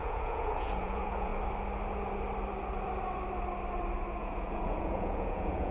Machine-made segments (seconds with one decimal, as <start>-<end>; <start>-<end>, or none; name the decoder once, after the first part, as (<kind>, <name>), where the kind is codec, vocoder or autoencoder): 0.0-1.3 (vocoder, Vocos); 4.2-5.7